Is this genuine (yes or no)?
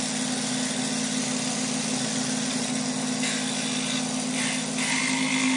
yes